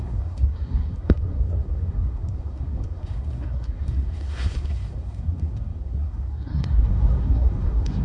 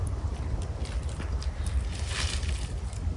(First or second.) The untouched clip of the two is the second